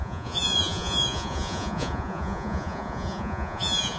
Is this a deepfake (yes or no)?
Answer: yes